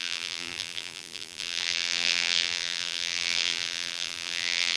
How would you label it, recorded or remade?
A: remade